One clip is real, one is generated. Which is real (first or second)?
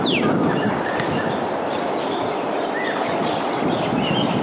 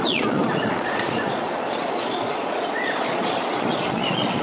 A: first